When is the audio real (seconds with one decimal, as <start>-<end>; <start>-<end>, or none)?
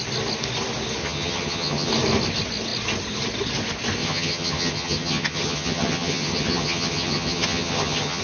0.0-1.0; 1.9-4.0